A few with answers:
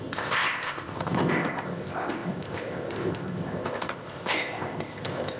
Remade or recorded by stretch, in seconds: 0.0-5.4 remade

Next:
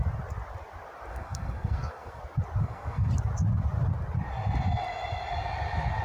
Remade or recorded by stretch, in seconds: 0.0-1.1 recorded; 1.1-2.2 remade; 2.2-2.6 recorded; 2.6-3.1 remade; 3.1-6.0 recorded

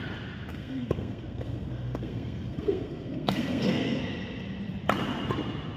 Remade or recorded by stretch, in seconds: 0.0-0.5 recorded; 0.5-4.0 remade; 4.0-5.8 recorded

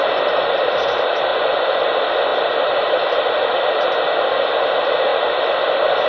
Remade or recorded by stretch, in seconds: 0.0-1.3 recorded; 1.3-1.8 remade; 1.8-6.1 recorded

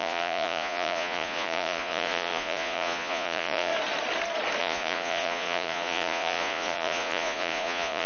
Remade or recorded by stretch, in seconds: 0.0-3.7 remade; 3.7-4.6 recorded; 4.6-8.1 remade